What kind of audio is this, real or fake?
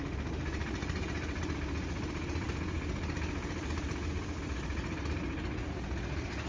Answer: real